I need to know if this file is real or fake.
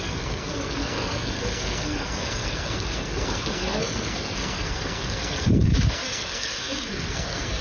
fake